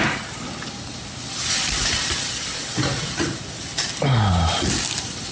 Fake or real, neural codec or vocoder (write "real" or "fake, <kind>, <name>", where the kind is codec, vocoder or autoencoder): real